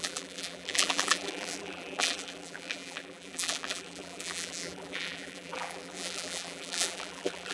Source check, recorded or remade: remade